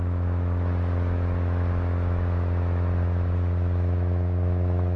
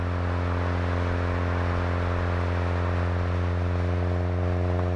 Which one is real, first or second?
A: second